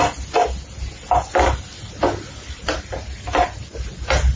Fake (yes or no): no